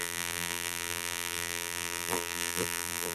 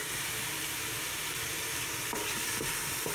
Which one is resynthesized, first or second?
first